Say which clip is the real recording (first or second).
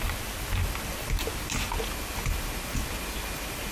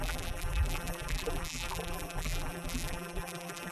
first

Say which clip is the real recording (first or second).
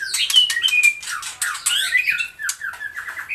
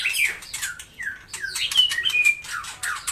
first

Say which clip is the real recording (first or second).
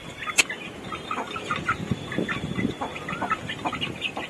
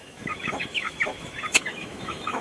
first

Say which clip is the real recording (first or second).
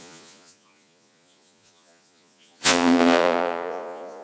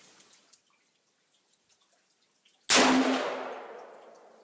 second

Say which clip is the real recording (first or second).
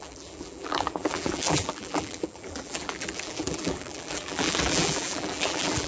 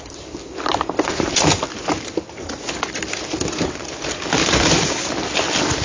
second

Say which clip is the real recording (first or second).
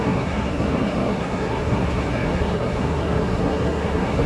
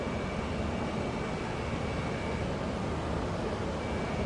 second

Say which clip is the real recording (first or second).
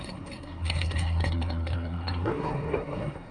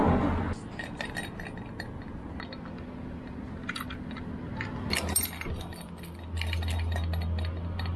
second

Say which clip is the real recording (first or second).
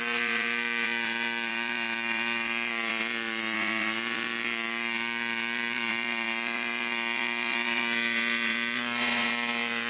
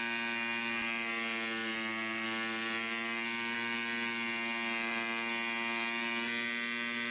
second